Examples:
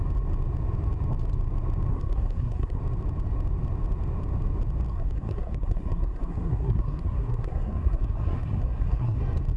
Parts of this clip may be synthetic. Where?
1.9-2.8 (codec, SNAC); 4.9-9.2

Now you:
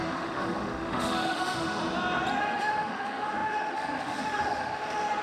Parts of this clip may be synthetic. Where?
0.0-1.8 (autoencoder, DAC-VAE); 2.4-5.2

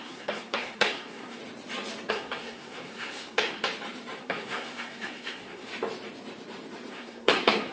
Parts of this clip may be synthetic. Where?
0.0-1.4 (codec, SNAC); 2.1-3.6; 4.2-5.7; 6.9-7.7

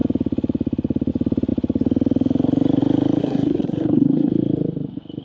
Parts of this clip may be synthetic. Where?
3.2-4.3 (codec, SNAC)